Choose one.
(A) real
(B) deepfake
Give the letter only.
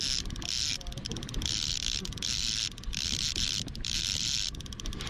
A